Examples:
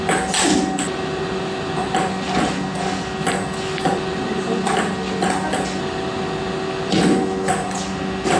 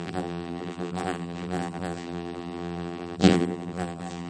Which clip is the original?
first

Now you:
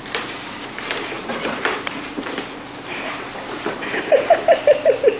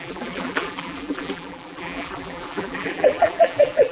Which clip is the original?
first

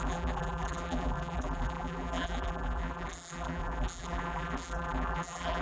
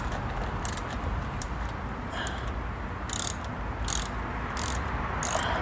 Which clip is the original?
second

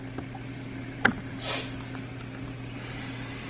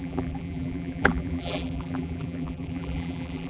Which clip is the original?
first